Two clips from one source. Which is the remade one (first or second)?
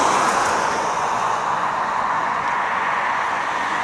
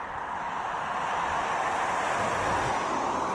first